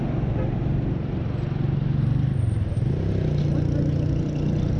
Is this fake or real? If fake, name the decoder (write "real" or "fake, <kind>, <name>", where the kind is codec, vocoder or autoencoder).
real